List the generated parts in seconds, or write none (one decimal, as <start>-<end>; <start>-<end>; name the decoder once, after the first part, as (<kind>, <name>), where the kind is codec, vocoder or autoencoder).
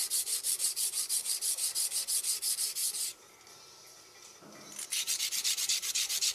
0.0-2.0 (vocoder, BigVGAN v2); 2.8-6.3